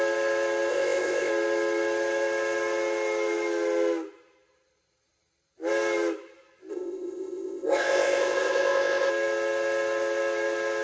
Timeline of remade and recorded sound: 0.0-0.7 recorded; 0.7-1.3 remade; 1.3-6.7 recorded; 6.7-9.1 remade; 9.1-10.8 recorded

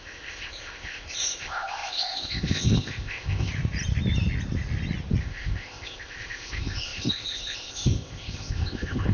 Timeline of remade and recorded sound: 0.0-3.5 remade; 3.5-5.2 recorded; 5.2-9.1 remade